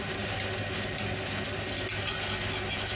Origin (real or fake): real